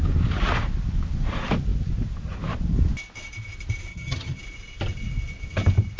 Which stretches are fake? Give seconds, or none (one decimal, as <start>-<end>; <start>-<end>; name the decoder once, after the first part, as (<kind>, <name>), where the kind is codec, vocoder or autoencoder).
3.9-4.4 (vocoder, HiFi-GAN)